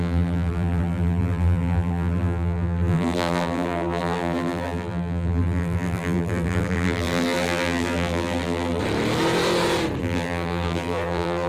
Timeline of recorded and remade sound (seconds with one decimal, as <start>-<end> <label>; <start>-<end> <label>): 0.0-8.8 remade; 8.8-10.0 recorded; 10.0-11.5 remade